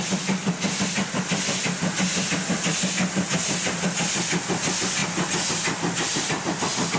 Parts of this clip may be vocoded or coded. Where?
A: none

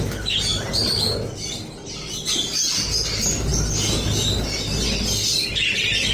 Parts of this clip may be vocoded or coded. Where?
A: none

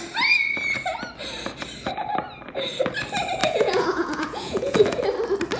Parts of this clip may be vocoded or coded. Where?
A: 3.4-5.0 (vocoder, Vocos)

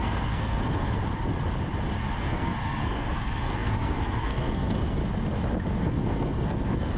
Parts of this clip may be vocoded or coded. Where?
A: 0.0-1.0 (codec, SNAC); 2.2-5.0; 5.8-7.0

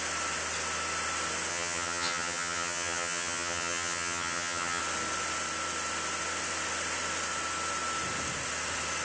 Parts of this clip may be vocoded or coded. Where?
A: 1.5-4.8 (vocoder, HiFi-GAN)